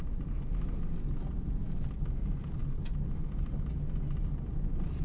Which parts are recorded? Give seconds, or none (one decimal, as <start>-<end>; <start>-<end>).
0.0-5.0

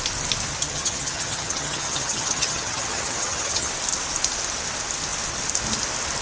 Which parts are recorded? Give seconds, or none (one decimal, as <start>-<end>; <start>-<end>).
0.0-0.6; 3.7-6.2

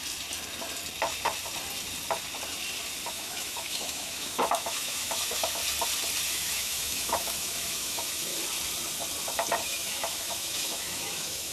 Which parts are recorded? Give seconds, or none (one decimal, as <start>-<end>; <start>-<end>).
0.0-3.1; 5.6-6.3; 8.3-9.6

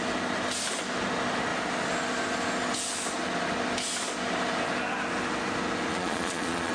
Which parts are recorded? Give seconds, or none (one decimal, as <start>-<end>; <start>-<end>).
0.0-5.9

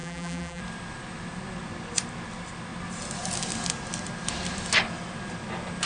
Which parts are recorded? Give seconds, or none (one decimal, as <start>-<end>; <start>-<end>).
0.6-5.9